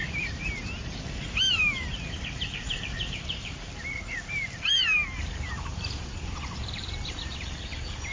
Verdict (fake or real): fake